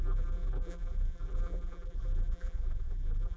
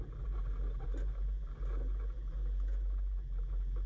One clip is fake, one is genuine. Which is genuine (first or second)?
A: second